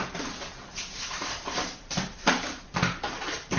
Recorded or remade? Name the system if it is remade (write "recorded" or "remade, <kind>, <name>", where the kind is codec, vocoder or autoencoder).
remade, vocoder, BigVGAN v2